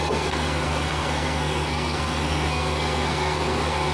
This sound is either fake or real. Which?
fake